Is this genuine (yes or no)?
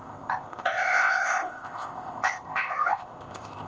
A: no